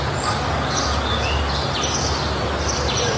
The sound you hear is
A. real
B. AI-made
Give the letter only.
A